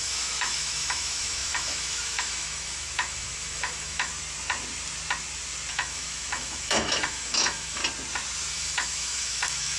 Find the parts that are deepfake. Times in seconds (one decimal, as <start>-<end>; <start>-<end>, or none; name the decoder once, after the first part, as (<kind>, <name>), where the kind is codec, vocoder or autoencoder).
0.0-4.1 (autoencoder, DAC-VAE); 5.7-7.8; 8.5-9.8